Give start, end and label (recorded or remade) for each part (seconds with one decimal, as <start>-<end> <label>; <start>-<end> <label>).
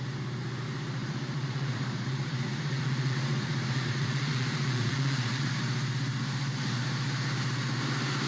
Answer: 0.0-1.0 recorded; 1.0-5.5 remade; 5.5-8.3 recorded